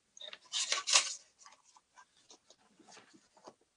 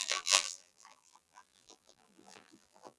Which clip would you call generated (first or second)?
second